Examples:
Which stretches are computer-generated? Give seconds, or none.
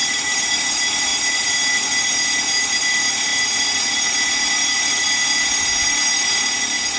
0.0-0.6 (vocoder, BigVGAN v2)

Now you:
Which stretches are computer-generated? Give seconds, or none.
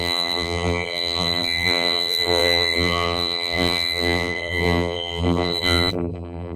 0.0-6.6 (vocoder, BigVGAN v2)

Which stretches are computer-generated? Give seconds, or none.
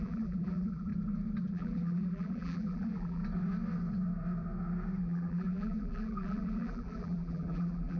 0.0-0.9 (vocoder, BigVGAN v2); 1.4-3.2; 5.0-8.0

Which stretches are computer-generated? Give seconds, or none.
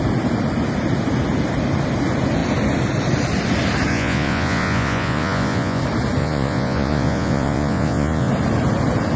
3.9-5.8 (vocoder, Vocos); 6.2-8.3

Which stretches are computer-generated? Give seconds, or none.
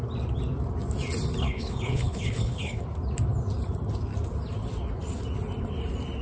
1.4-2.8 (codec, HILCodec)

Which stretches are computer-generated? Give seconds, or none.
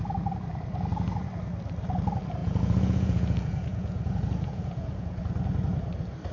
2.4-5.2 (vocoder, Vocos)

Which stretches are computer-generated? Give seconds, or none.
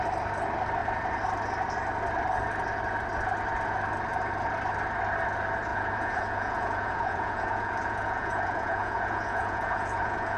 5.7-10.4 (vocoder, Vocos)